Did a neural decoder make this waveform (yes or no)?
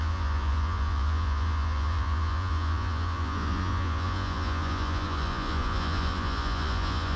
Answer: yes